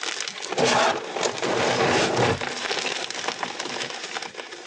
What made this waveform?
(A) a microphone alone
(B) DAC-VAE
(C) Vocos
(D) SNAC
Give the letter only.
A